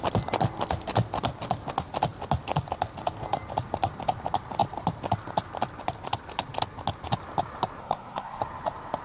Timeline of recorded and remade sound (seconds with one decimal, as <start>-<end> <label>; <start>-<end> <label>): 0.0-7.8 recorded; 7.8-8.4 remade; 8.4-9.0 recorded